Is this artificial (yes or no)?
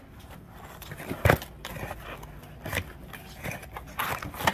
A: no